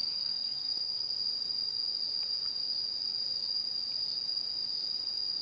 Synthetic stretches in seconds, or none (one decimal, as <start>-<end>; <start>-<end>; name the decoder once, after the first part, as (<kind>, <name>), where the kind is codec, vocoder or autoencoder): 0.0-1.1 (codec, SNAC)